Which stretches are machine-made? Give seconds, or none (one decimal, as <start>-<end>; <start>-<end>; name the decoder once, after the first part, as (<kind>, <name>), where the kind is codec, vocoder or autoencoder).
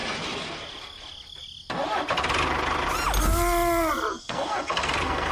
4.1-5.3 (codec, SNAC)